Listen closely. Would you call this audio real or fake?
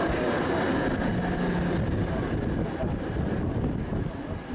real